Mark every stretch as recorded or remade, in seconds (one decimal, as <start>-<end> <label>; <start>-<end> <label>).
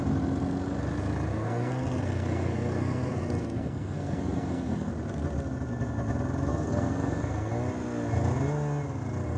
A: 0.0-1.3 recorded; 1.3-4.9 remade; 4.9-6.5 recorded; 6.5-7.5 remade; 7.5-9.4 recorded